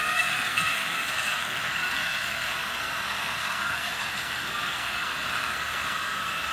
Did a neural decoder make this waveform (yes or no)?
yes